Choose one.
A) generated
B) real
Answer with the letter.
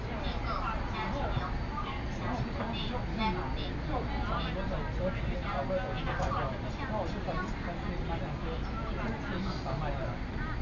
B